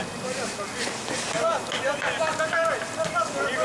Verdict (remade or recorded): recorded